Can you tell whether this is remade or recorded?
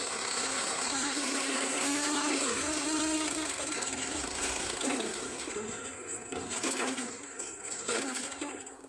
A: remade